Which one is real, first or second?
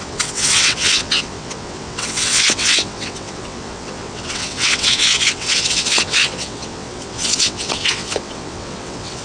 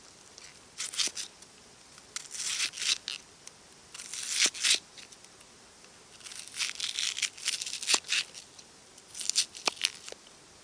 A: second